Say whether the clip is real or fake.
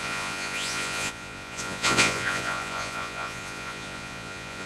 fake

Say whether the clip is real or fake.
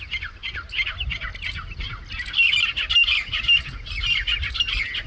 real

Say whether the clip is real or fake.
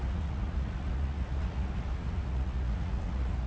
fake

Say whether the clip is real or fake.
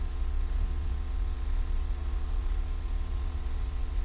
fake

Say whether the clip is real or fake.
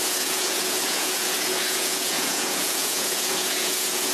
fake